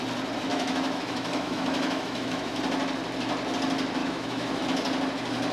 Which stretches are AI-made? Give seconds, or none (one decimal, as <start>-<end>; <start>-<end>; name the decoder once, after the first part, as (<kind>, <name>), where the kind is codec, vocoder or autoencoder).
0.5-2.6 (autoencoder, DAC-VAE); 4.0-4.6